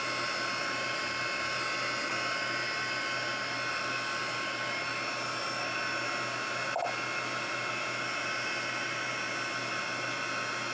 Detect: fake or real real